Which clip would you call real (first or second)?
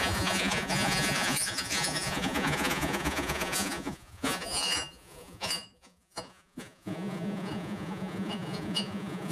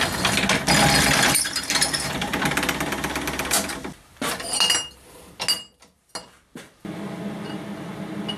second